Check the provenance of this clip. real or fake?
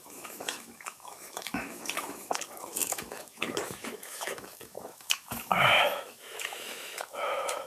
fake